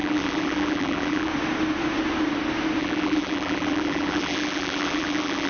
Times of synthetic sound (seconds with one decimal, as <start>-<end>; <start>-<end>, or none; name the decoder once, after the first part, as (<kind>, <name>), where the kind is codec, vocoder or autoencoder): 0.0-1.3 (vocoder, BigVGAN v2); 2.8-5.5